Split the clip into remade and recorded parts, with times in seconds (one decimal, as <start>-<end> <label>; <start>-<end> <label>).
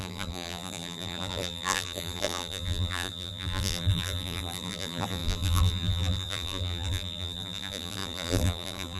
0.0-9.0 remade